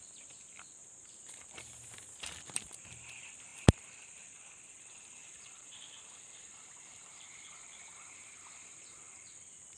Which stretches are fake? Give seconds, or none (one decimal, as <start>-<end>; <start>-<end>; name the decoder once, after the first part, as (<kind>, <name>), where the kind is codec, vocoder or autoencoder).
0.8-2.8 (vocoder, BigVGAN v2); 5.2-9.0